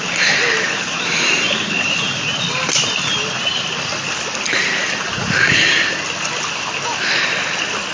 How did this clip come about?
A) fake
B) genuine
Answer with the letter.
B